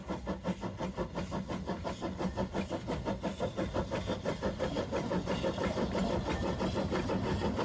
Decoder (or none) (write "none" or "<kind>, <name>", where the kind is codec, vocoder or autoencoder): none